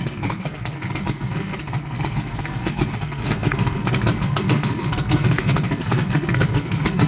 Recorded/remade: remade